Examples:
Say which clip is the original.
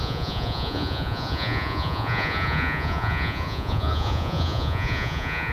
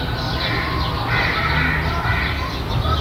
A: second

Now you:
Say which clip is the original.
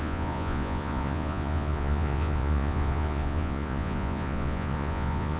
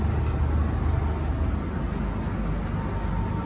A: second